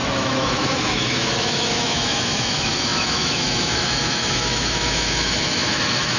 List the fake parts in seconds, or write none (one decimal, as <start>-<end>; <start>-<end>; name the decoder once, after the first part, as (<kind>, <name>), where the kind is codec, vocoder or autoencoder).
0.0-6.2 (autoencoder, DAC-VAE)